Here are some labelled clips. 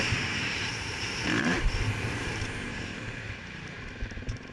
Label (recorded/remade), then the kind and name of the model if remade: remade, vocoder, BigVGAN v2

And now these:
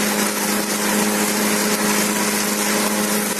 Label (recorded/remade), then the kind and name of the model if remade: recorded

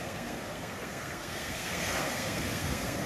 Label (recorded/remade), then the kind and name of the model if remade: remade, codec, SNAC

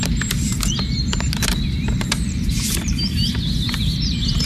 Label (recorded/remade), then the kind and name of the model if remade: remade, vocoder, BigVGAN v2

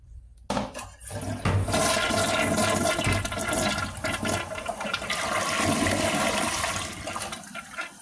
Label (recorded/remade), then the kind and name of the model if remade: recorded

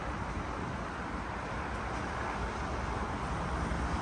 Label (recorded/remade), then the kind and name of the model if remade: recorded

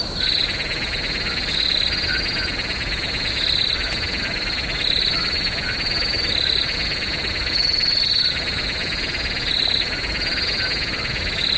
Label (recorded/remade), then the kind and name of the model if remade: recorded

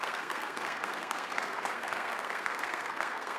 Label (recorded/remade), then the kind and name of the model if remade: remade, codec, SNAC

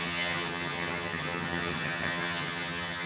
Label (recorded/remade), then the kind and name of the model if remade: remade, vocoder, HiFi-GAN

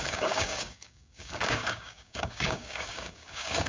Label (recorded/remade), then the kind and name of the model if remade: remade, codec, DAC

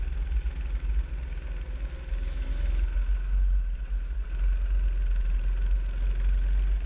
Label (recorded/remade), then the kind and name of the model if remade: recorded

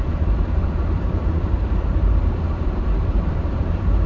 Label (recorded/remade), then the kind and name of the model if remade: remade, vocoder, BigVGAN v2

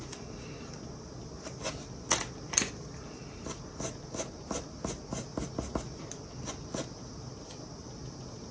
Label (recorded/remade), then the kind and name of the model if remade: recorded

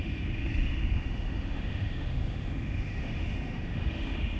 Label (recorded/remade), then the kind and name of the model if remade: remade, autoencoder, DAC-VAE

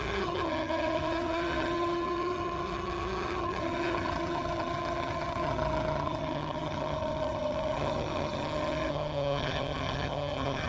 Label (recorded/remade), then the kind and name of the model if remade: remade, vocoder, HiFi-GAN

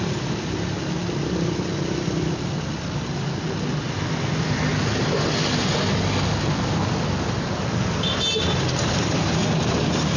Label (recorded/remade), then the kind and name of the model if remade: recorded